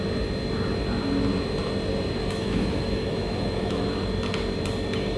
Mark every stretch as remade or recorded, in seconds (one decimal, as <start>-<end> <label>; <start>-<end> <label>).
0.0-2.2 recorded; 2.2-3.9 remade; 3.9-5.2 recorded